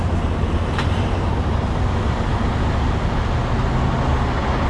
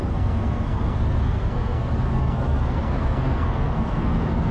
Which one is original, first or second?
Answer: first